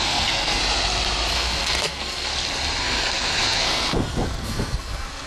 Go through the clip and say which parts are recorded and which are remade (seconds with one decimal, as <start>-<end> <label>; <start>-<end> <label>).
0.0-0.6 remade; 0.6-1.3 recorded; 1.3-2.3 remade; 2.3-2.8 recorded; 2.8-5.3 remade